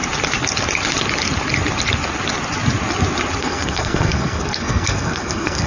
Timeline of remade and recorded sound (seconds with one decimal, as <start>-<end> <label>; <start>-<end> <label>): 0.0-3.4 recorded; 3.4-5.7 remade